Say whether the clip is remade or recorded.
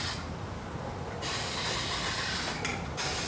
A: recorded